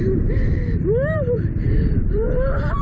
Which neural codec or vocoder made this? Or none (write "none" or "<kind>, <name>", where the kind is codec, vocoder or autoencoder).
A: vocoder, BigVGAN v2